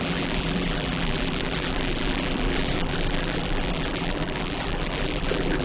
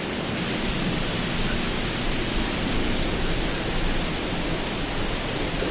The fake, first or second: first